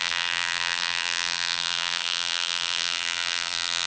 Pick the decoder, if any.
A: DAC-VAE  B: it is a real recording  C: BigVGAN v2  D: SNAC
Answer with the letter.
C